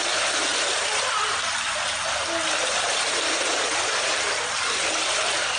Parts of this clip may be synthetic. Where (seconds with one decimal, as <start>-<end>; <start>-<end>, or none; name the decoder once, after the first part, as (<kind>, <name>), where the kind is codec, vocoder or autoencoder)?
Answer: none